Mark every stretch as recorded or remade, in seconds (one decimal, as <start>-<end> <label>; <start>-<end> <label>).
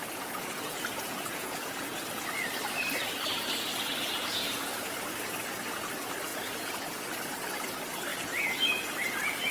0.0-2.0 remade; 2.0-3.7 recorded; 3.7-4.9 remade; 4.9-6.3 recorded; 6.3-7.0 remade; 7.0-8.1 recorded; 8.1-8.8 remade; 8.8-9.5 recorded